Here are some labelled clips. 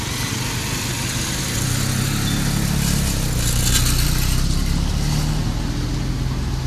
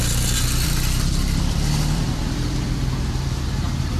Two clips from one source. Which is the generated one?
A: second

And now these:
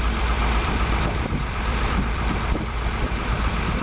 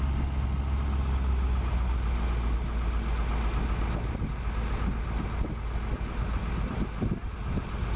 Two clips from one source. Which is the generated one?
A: first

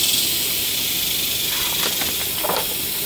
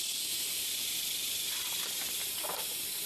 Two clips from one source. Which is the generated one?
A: second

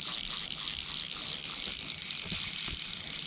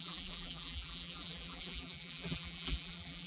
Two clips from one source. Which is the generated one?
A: second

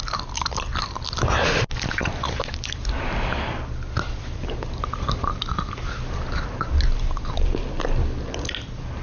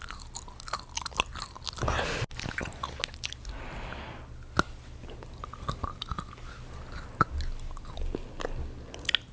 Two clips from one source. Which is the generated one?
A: first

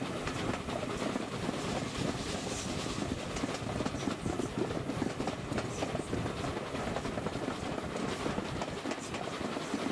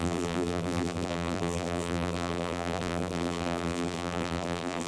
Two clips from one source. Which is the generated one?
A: second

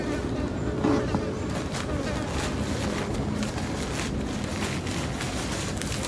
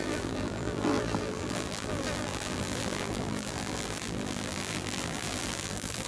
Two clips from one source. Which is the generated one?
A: second